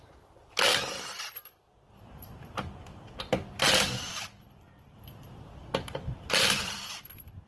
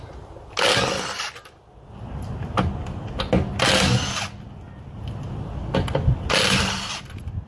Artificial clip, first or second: first